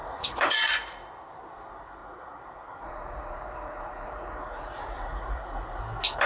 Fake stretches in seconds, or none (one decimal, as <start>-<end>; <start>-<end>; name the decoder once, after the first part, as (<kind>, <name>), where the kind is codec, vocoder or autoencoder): 0.0-1.1 (vocoder, Vocos); 2.0-5.8